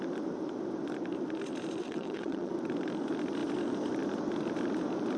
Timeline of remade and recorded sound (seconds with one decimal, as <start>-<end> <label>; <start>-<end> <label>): 0.0-1.8 recorded; 1.8-2.5 remade; 2.5-5.2 recorded